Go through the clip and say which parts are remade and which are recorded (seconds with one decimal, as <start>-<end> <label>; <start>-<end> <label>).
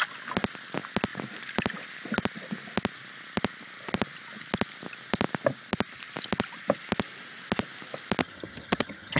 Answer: 0.0-8.2 recorded; 8.2-9.2 remade